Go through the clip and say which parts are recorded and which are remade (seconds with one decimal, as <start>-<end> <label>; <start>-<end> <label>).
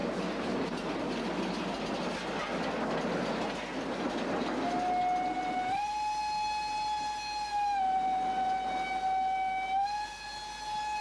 0.0-11.0 recorded